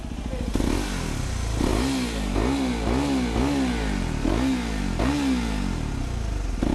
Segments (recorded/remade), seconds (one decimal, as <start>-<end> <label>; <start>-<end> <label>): 0.0-6.7 recorded